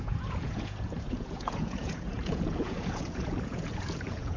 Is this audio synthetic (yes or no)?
yes